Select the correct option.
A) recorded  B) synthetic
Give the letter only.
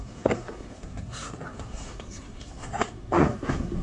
B